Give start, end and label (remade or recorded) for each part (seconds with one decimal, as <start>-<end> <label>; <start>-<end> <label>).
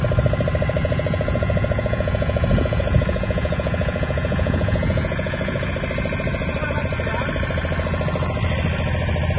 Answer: 0.0-0.8 recorded; 0.8-5.7 remade; 5.7-9.4 recorded